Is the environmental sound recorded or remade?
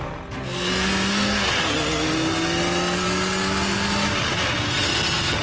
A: recorded